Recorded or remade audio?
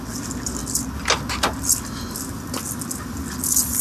recorded